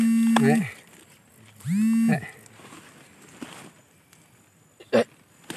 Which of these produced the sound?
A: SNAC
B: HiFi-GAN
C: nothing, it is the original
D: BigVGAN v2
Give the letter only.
C